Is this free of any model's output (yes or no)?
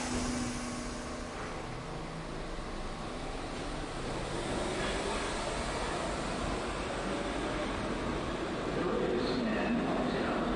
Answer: yes